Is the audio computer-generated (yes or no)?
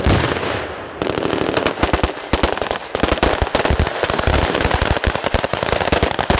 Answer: no